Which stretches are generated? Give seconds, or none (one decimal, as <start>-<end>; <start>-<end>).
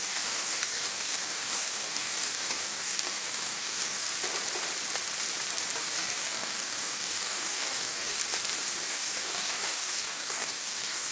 0.0-4.1; 5.8-8.2; 8.9-11.1